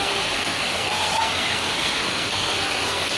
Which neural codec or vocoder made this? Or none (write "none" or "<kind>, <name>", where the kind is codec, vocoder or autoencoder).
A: codec, SNAC